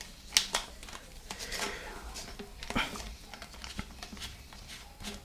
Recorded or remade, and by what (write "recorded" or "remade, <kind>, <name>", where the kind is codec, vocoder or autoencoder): recorded